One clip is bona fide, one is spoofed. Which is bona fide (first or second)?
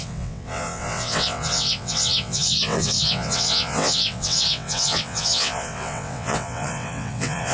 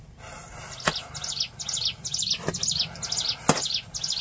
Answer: second